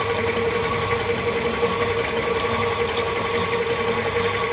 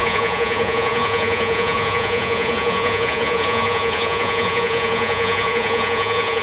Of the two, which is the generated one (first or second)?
second